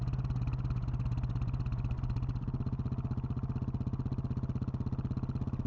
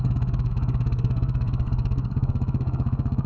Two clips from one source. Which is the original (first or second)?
first